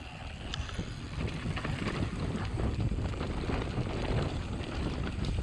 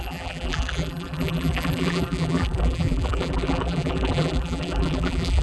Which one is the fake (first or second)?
second